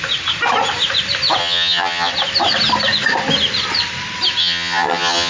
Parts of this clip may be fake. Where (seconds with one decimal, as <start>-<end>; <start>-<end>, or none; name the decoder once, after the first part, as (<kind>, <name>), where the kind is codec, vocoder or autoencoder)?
1.4-2.1 (vocoder, HiFi-GAN); 4.4-5.3